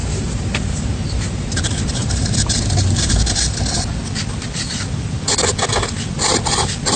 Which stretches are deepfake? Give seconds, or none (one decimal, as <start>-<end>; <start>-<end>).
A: 0.0-3.0